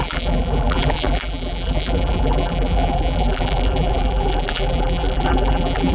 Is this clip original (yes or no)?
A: no